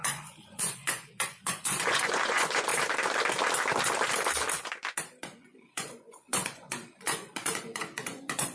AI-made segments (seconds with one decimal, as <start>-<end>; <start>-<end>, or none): 0.0-2.7; 5.2-8.5